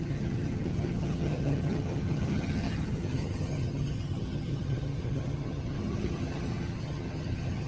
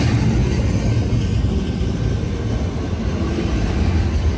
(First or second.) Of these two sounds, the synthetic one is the first